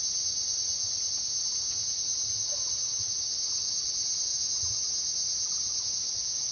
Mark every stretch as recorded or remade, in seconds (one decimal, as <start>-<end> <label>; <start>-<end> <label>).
0.0-6.5 recorded